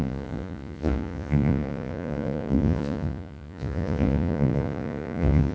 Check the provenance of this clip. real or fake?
fake